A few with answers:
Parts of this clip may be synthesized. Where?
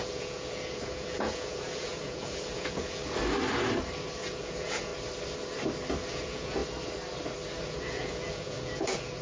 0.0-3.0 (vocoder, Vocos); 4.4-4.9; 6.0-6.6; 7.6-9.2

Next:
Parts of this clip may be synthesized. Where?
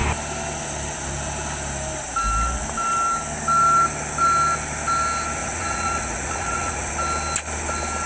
5.4-6.9 (vocoder, Vocos)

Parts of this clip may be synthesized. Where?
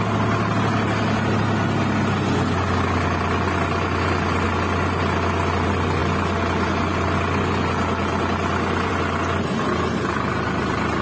none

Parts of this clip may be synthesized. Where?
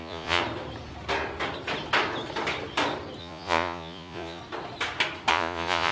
0.0-0.4 (vocoder, Vocos); 3.2-4.4; 5.3-5.9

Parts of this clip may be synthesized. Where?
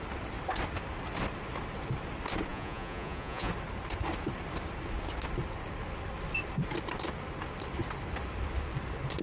2.5-3.5 (vocoder, Vocos)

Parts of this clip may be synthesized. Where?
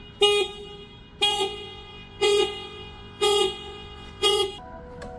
1.3-4.4 (vocoder, Vocos)